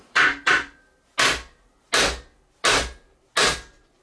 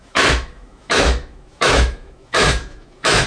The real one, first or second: first